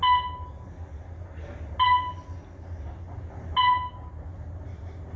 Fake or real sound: real